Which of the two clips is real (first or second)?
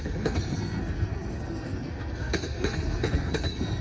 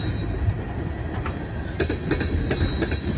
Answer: second